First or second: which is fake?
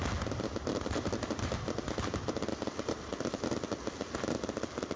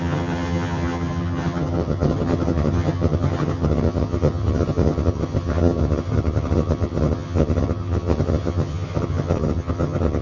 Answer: second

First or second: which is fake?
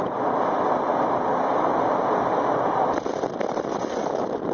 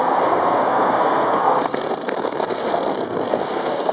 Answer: second